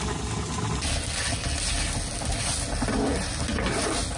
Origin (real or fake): real